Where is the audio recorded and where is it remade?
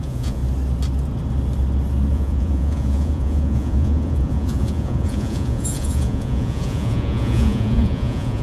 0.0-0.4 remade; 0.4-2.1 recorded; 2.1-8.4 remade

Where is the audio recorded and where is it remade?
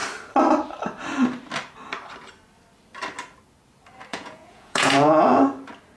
0.0-4.1 recorded; 4.1-5.3 remade; 5.3-6.0 recorded